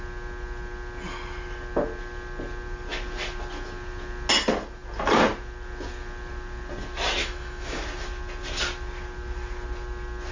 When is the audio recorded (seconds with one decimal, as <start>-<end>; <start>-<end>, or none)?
0.0-7.2; 7.8-10.3